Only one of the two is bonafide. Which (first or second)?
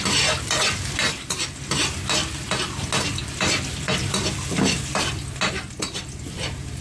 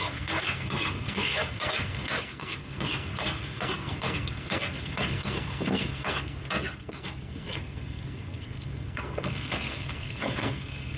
first